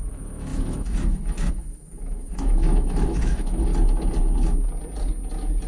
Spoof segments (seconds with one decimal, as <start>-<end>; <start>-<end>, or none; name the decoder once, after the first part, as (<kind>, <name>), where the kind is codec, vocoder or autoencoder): 0.0-3.7 (autoencoder, DAC-VAE)